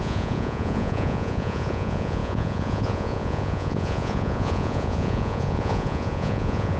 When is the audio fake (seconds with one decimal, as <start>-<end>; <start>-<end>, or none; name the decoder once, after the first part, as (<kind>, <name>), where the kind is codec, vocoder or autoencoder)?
0.0-6.8 (vocoder, Vocos)